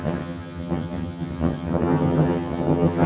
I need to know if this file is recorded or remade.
remade